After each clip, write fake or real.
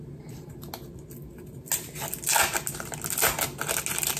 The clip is real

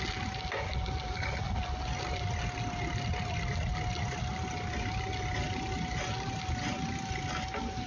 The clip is real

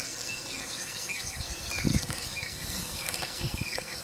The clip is fake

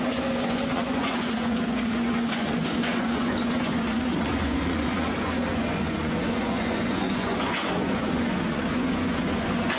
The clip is fake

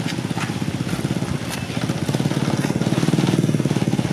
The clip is real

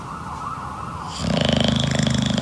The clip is real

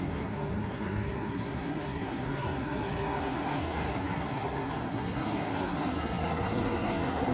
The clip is fake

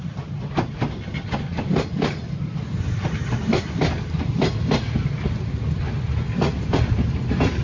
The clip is real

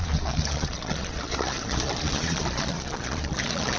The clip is fake